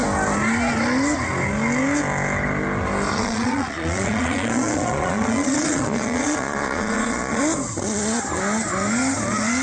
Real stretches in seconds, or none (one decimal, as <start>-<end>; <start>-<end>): 0.0-3.1; 7.4-9.6

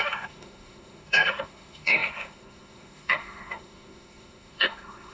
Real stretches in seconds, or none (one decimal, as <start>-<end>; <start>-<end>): none

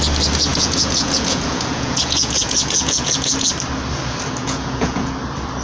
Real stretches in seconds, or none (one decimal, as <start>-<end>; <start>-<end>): 0.0-0.5; 3.5-4.4; 5.1-5.6

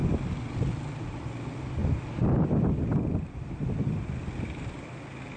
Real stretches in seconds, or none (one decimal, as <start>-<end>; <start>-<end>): 0.0-1.8; 5.0-5.4

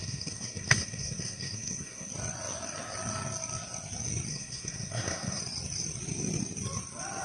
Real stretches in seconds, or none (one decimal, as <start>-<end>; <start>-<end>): 2.1-4.3; 5.4-7.2

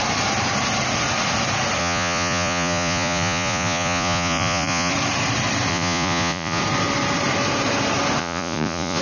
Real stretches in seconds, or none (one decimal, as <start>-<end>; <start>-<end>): 0.0-1.8; 4.9-5.7; 6.6-8.2